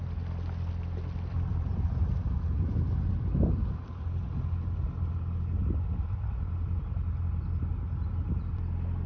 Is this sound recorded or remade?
recorded